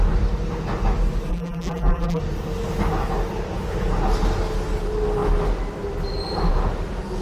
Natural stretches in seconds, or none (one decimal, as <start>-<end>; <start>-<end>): 0.0-1.3; 2.2-7.2